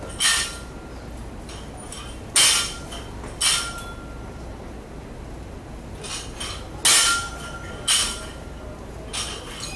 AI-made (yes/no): no